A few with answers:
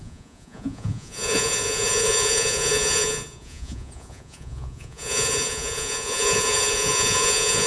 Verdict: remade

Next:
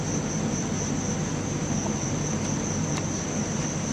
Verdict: recorded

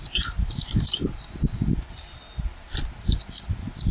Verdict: recorded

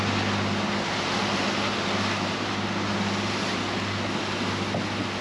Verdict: recorded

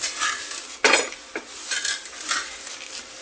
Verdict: recorded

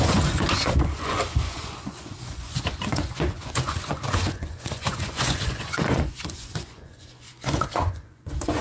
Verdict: remade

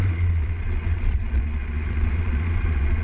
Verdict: remade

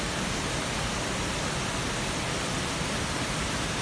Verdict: recorded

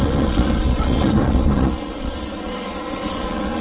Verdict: remade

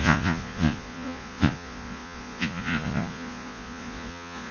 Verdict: remade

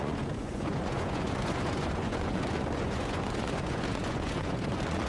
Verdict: remade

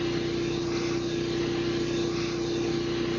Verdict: recorded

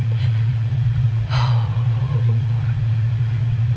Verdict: remade